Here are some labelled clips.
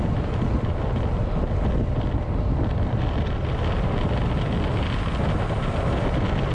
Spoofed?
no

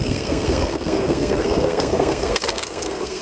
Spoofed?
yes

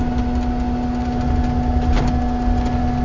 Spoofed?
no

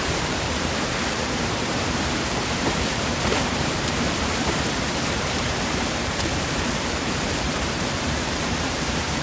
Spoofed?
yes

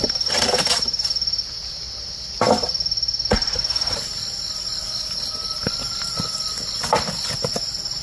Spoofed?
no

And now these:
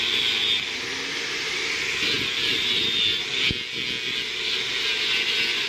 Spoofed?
no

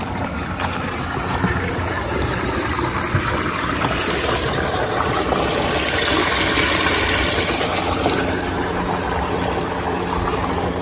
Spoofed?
no